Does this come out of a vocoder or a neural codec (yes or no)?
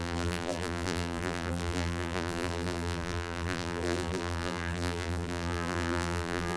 yes